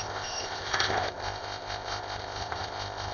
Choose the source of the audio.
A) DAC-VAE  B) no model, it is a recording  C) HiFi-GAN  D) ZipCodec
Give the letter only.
D